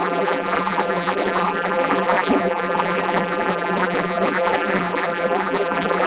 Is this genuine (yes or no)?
no